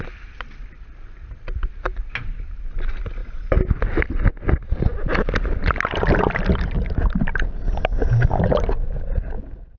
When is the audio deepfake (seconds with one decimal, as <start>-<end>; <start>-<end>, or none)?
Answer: none